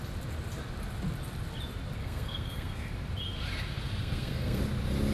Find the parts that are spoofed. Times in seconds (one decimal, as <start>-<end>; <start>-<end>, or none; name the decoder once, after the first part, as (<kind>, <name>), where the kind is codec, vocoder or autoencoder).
2.0-2.9 (codec, SNAC); 4.0-4.6